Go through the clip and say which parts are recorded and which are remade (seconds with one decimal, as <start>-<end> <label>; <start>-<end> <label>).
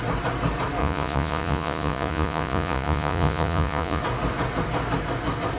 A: 0.0-0.8 recorded; 0.8-4.0 remade; 4.0-5.6 recorded